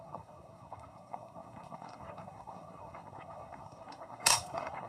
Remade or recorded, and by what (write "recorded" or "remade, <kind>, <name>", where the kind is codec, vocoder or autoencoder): remade, codec, SNAC